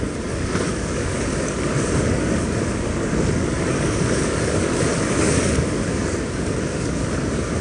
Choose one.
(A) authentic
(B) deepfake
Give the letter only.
B